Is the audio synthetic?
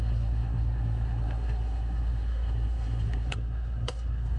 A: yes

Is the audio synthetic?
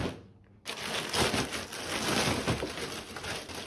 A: no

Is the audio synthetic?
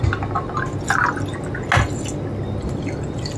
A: no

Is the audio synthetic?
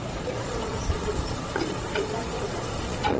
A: yes